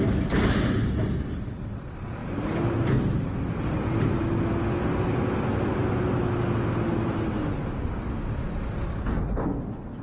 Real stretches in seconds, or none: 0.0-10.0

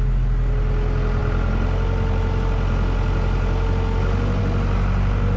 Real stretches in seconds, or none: 0.0-5.4

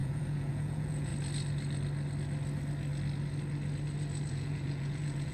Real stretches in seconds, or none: 1.1-4.3

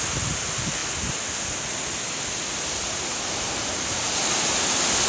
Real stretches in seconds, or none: 0.0-5.1

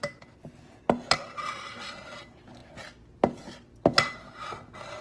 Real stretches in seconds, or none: 0.0-5.0

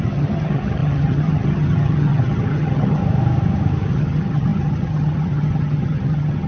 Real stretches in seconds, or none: 3.0-3.9

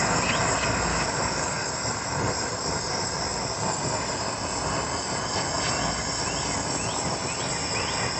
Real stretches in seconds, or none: 0.0-0.9; 1.7-8.2